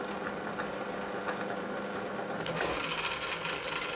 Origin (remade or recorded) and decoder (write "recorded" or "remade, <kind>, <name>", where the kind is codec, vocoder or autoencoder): recorded